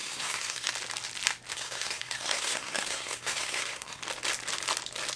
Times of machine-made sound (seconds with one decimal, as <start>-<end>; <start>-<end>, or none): 0.0-0.7; 1.5-4.0